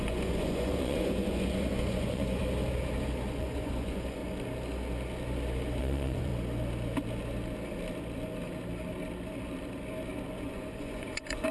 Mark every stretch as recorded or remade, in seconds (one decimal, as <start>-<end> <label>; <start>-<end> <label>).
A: 0.0-2.4 remade; 2.4-3.4 recorded; 3.4-4.2 remade; 4.2-5.8 recorded; 5.8-6.3 remade; 6.3-10.5 recorded; 10.5-11.5 remade